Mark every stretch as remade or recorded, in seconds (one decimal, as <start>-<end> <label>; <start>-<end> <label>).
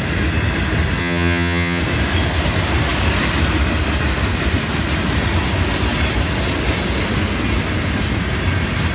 0.0-1.0 recorded; 1.0-1.8 remade; 1.8-8.9 recorded